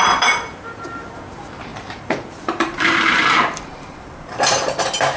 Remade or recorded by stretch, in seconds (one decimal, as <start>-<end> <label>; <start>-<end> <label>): 0.0-5.2 remade